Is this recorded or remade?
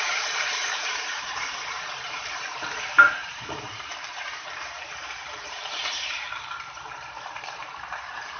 remade